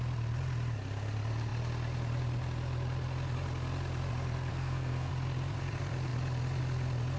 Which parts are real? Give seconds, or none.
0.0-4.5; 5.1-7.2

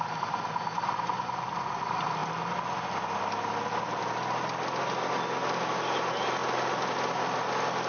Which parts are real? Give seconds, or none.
0.0-7.9

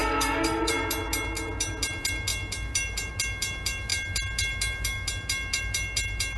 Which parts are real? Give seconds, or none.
0.7-6.4

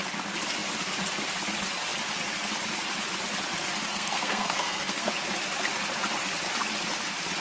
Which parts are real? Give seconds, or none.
0.0-3.9; 5.1-7.4

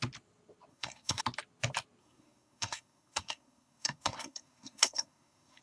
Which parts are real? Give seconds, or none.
0.0-0.7; 1.2-2.0

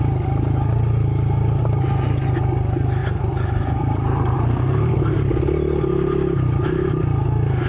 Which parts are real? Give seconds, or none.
0.0-3.0; 4.9-7.7